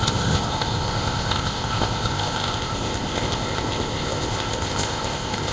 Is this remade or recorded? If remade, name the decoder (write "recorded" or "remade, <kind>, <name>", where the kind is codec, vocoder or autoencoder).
remade, codec, ZipCodec